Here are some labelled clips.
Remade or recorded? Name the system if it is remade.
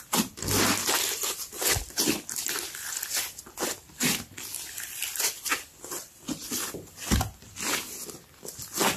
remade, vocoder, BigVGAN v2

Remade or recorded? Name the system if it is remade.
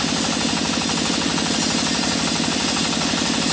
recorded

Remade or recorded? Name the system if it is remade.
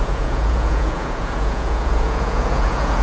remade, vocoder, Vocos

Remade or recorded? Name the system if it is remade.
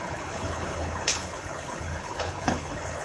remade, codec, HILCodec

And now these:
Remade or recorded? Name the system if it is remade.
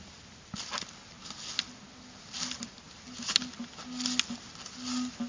recorded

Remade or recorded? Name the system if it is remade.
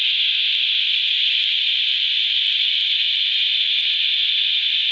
recorded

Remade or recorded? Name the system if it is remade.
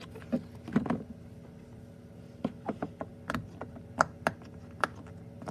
recorded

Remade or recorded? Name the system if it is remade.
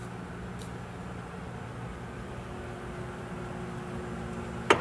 recorded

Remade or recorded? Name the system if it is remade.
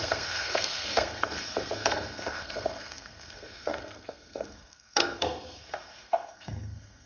remade, codec, SNAC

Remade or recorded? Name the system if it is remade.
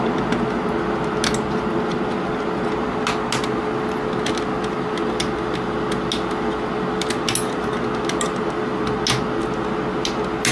recorded